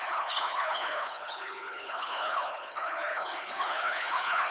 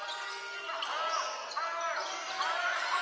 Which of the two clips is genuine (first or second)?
second